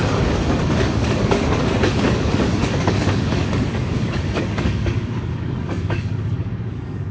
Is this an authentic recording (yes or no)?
no